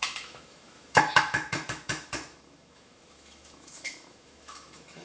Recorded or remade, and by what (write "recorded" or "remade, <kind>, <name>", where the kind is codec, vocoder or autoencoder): remade, autoencoder, DAC-VAE